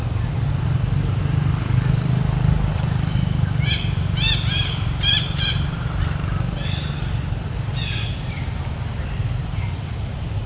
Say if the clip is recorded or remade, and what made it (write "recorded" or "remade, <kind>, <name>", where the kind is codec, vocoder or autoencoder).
recorded